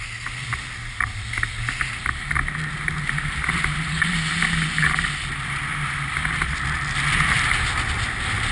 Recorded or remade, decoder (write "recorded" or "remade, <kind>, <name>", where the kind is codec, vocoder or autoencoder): recorded